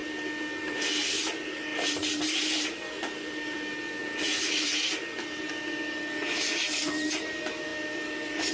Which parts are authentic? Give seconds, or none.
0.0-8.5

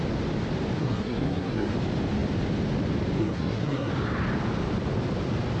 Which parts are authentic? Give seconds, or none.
0.0-0.8; 1.7-3.2; 3.9-5.6

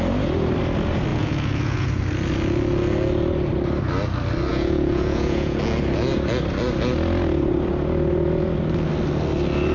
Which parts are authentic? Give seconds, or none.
0.0-1.1; 2.0-4.5; 5.6-9.7

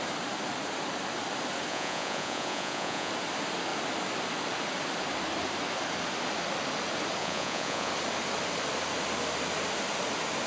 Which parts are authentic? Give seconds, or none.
0.0-1.7; 3.1-7.2; 7.9-10.5

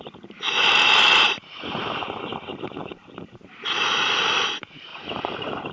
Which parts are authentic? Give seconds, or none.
2.3-2.8

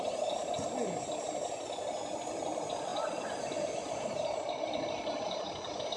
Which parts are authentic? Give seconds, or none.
0.0-6.0